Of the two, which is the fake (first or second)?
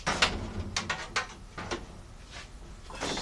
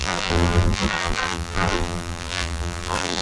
second